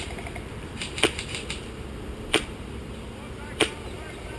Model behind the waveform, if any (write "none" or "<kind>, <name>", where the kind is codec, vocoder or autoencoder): vocoder, BigVGAN v2